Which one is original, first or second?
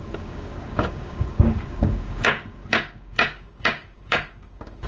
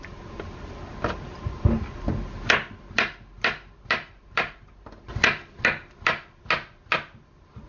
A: second